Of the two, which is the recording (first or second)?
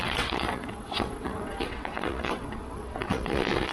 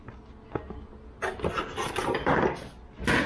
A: second